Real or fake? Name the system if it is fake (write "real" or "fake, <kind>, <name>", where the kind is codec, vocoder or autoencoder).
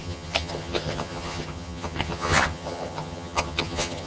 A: fake, vocoder, HiFi-GAN